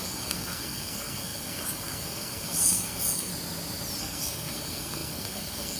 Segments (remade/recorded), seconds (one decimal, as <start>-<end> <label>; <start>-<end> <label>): 0.0-3.3 remade; 3.3-4.0 recorded; 4.0-5.8 remade